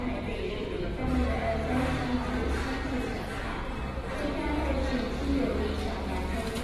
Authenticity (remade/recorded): recorded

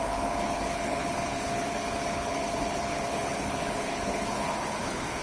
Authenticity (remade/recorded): remade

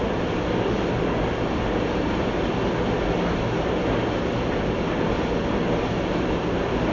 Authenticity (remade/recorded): recorded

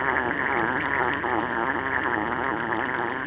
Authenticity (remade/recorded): recorded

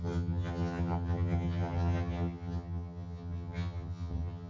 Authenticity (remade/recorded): remade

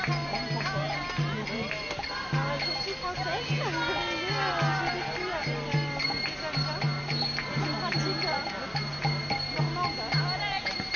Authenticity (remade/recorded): recorded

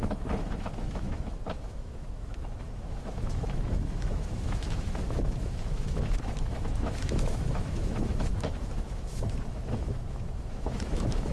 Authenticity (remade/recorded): remade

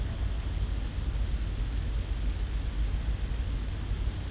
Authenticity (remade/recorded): recorded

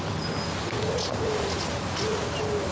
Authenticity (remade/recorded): recorded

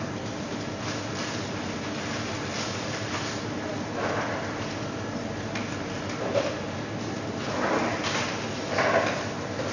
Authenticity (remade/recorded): recorded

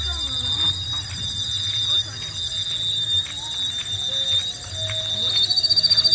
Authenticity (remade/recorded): recorded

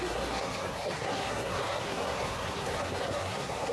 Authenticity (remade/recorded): remade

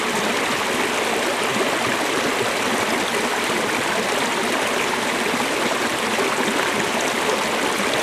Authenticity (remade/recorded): recorded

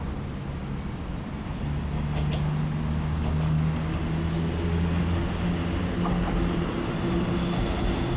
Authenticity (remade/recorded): recorded